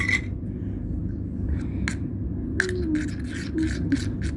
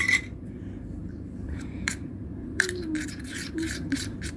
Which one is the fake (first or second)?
second